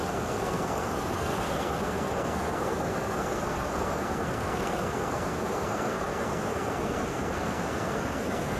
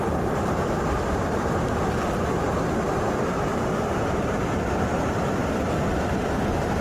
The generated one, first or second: first